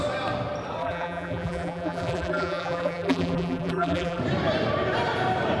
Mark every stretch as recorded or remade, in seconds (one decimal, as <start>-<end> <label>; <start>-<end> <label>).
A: 0.0-0.8 recorded; 0.8-4.2 remade; 4.2-5.6 recorded